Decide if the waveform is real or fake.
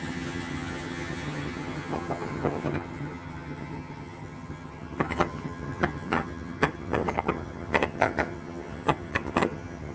fake